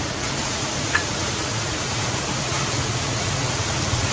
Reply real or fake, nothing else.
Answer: fake